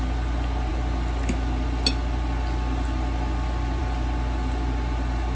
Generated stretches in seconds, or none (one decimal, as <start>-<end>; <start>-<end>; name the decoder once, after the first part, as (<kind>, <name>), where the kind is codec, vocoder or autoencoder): none